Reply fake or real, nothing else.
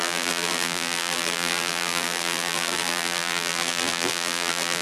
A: fake